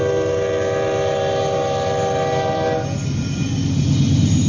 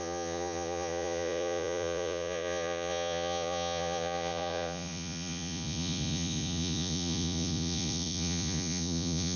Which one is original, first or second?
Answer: first